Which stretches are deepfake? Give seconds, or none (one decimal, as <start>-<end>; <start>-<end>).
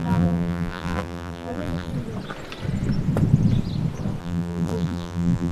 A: 0.0-1.9; 4.2-5.5